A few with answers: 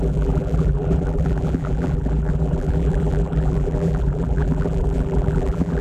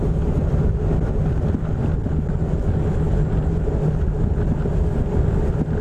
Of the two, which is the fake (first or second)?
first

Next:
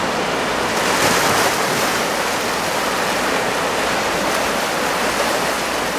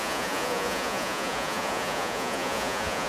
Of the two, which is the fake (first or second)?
second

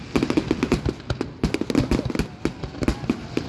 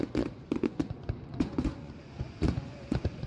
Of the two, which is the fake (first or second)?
second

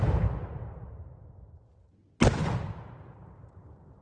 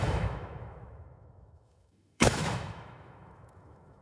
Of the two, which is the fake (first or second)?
second